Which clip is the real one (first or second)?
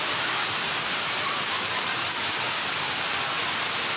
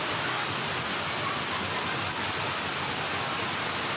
second